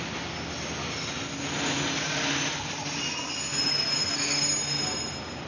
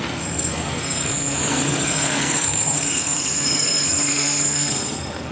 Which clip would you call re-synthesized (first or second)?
second